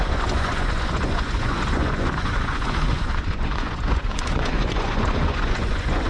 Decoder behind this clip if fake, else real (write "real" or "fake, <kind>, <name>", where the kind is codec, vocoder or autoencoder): fake, vocoder, Vocos